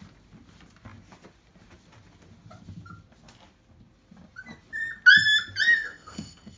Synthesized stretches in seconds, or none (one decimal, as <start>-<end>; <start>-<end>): 5.7-6.6